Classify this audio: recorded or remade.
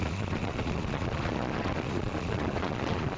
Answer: remade